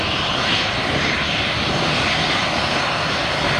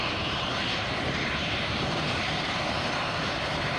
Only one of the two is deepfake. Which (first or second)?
second